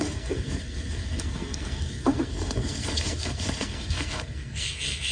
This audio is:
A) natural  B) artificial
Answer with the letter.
B